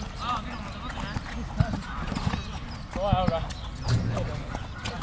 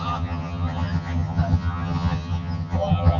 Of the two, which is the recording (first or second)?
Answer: first